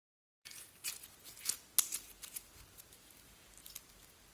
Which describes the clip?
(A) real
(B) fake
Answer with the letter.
A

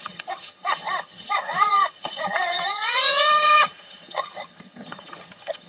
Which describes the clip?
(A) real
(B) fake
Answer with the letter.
B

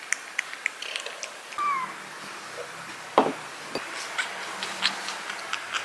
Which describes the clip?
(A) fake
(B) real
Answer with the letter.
B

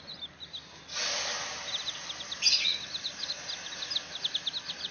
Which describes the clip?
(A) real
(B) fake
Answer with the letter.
A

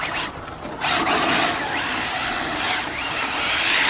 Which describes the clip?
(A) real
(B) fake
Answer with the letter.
A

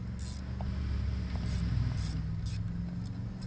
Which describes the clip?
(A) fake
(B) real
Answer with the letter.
B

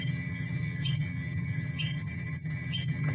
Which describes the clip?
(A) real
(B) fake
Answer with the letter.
B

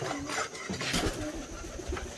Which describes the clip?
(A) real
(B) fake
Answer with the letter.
A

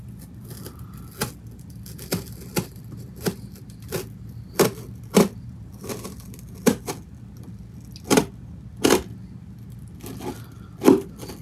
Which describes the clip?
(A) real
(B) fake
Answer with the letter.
A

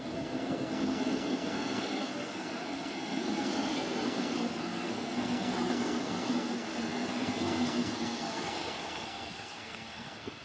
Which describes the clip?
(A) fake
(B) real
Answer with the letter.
A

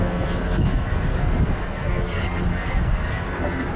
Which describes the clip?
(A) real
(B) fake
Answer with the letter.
B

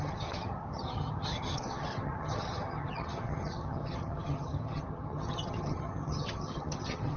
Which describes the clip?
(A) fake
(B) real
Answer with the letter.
A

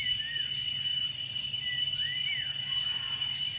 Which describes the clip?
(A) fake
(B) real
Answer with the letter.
B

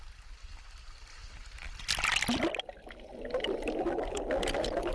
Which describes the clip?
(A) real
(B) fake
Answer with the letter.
A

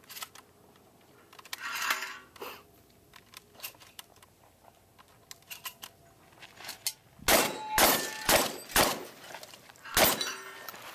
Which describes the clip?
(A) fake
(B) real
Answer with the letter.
B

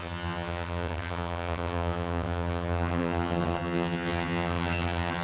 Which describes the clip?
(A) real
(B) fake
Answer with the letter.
B